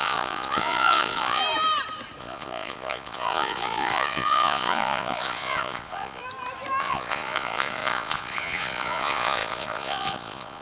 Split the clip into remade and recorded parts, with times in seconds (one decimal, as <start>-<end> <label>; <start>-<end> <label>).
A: 0.0-1.4 remade; 1.4-2.2 recorded; 2.2-6.2 remade; 6.2-6.8 recorded; 6.8-10.6 remade

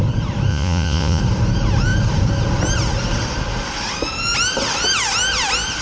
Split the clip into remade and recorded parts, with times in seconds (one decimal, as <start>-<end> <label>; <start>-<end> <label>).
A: 0.0-0.5 recorded; 0.5-1.2 remade; 1.2-5.8 recorded

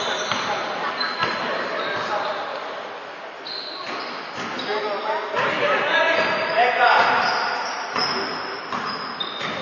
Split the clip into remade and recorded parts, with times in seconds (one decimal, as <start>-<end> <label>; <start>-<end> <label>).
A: 0.0-9.6 recorded

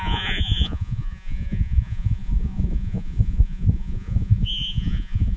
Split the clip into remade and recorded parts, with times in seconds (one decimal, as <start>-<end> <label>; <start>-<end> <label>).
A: 0.0-5.4 remade

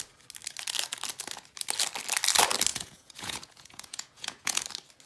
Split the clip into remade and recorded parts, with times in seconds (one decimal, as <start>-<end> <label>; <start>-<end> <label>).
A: 0.0-2.7 recorded; 2.7-4.6 remade; 4.6-5.1 recorded

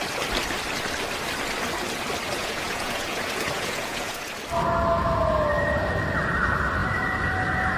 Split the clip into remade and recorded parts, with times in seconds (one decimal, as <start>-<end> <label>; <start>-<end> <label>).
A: 0.0-2.4 recorded; 2.4-4.3 remade; 4.3-7.8 recorded

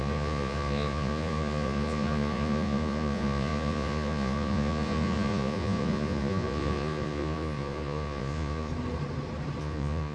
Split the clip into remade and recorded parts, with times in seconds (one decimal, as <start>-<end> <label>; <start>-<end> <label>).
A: 0.0-8.7 remade; 8.7-9.6 recorded; 9.6-10.1 remade

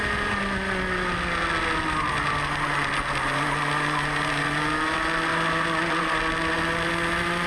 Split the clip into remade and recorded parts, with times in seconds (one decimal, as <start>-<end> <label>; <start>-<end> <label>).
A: 0.0-7.5 recorded